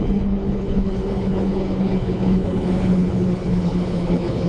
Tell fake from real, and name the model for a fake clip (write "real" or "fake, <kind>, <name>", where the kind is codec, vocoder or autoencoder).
fake, codec, HILCodec